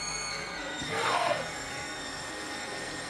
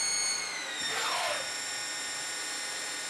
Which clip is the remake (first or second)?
first